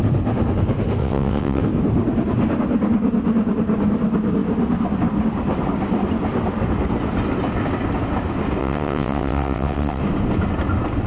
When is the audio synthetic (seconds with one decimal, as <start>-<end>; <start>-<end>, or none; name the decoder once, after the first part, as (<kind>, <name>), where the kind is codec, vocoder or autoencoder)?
1.0-1.6 (vocoder, WaveNeXt); 8.6-10.0